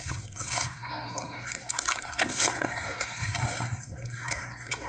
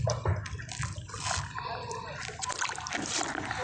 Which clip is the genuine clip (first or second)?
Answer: second